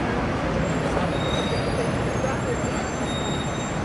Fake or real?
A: fake